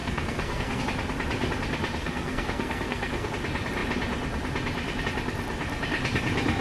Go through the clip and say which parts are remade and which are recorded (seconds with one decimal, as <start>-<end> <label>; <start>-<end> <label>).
0.0-0.8 remade; 0.8-2.0 recorded; 2.0-3.3 remade; 3.3-6.6 recorded